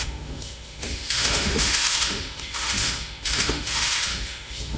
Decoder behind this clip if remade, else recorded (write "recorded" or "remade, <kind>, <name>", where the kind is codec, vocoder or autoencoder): remade, autoencoder, DAC-VAE